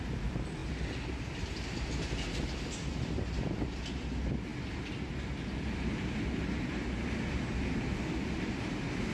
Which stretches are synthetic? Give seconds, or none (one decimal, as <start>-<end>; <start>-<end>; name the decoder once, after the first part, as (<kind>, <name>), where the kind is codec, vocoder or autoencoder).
none